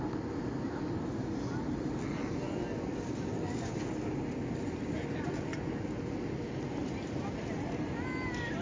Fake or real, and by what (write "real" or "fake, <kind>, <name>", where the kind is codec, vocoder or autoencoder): real